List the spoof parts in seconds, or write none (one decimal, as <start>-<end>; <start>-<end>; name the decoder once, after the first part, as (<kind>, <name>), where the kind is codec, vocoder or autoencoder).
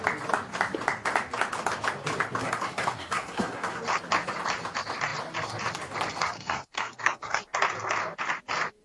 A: 2.4-3.8 (codec, SNAC); 6.2-7.4